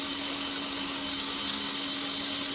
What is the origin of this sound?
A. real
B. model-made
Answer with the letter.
A